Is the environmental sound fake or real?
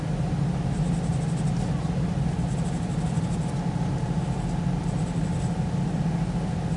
real